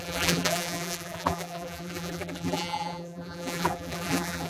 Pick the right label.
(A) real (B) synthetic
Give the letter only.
B